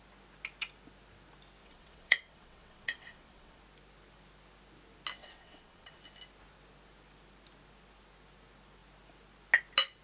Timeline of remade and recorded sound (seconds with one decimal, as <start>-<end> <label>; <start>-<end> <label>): 0.0-1.6 recorded; 1.6-3.6 remade; 3.6-5.2 recorded; 5.2-6.0 remade; 6.0-10.0 recorded